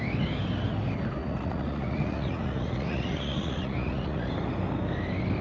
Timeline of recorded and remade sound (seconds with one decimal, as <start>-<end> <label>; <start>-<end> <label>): 0.0-1.2 recorded; 1.2-4.3 remade; 4.3-5.4 recorded